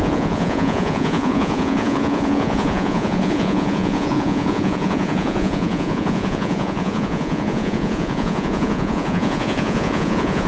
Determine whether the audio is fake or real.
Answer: fake